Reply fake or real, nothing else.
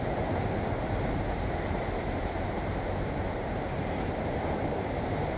fake